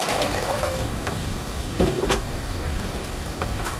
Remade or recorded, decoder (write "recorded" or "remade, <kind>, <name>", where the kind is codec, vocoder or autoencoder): remade, codec, DAC